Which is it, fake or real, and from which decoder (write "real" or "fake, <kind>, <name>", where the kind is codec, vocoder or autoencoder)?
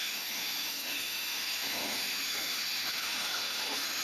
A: fake, autoencoder, DAC-VAE